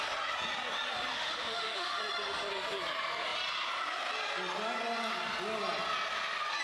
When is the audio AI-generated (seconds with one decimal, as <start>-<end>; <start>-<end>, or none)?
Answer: 1.1-2.0